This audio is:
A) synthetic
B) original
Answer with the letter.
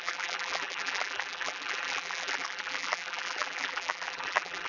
A